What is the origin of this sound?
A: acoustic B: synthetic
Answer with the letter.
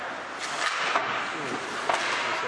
A